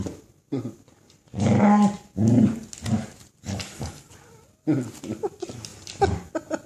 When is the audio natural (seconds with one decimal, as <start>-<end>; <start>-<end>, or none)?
0.0-6.7